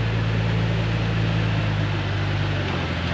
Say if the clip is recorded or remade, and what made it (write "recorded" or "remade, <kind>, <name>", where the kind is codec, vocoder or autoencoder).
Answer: recorded